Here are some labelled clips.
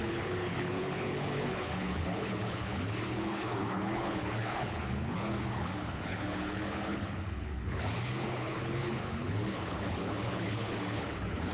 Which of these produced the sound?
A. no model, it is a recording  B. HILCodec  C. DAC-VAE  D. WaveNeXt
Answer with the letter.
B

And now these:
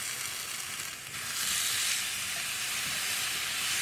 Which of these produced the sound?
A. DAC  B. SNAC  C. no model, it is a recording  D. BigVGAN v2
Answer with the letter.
C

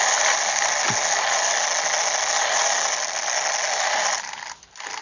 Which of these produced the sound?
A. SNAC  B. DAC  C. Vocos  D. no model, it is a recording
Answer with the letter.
D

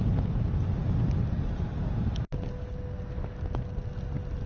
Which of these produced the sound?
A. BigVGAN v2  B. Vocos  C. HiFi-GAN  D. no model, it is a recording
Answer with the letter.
D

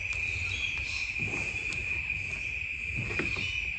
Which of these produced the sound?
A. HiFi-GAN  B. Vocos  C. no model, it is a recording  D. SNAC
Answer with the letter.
C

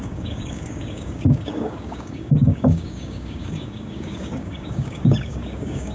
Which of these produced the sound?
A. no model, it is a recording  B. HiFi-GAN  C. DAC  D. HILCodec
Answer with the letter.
C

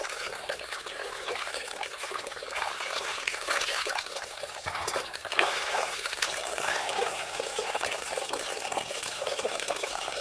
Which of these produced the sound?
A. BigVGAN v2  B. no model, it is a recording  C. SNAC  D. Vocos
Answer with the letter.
C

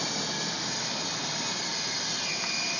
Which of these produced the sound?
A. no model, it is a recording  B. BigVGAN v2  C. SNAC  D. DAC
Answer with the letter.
A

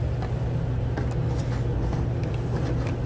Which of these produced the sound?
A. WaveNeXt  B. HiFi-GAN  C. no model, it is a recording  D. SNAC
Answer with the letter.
C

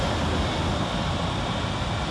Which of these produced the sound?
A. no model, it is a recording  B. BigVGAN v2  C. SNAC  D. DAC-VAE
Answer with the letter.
A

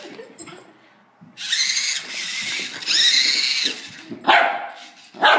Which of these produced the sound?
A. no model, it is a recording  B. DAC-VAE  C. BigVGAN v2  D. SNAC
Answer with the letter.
A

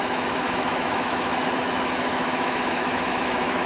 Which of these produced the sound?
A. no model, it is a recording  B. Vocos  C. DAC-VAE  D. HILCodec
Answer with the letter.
C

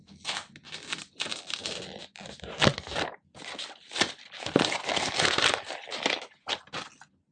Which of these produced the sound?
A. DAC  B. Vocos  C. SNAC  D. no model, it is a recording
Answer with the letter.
D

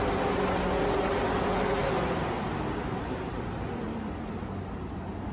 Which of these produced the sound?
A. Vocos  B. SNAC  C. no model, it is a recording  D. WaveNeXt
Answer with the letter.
C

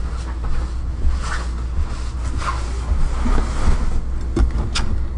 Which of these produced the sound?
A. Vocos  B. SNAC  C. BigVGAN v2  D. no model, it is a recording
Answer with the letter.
D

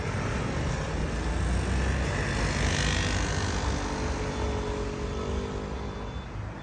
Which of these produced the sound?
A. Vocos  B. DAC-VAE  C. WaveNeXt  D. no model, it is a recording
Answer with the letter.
D